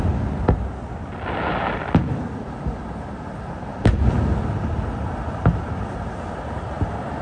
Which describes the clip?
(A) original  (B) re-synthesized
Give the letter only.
A